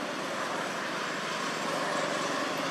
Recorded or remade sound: recorded